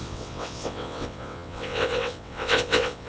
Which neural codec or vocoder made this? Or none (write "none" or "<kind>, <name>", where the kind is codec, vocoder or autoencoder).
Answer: vocoder, WaveNeXt